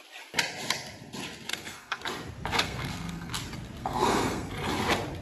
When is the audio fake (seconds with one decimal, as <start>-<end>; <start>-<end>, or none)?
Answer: 1.5-2.0; 2.6-3.3; 3.8-4.5